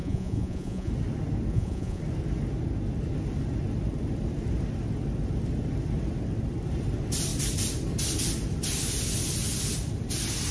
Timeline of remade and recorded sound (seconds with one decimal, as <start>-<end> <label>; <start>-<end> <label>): 0.0-0.9 remade; 0.9-1.5 recorded; 1.5-2.0 remade; 2.0-10.5 recorded